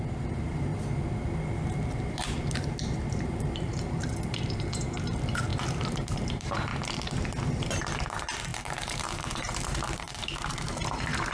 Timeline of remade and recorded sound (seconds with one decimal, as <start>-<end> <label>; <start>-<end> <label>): 0.0-0.7 remade; 0.7-1.9 recorded; 1.9-6.7 remade; 6.7-7.6 recorded; 7.6-11.3 remade